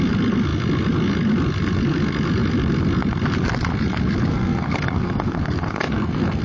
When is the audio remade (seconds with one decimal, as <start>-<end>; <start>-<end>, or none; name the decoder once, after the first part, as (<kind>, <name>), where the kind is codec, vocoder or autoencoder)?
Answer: 4.3-6.4 (codec, SNAC)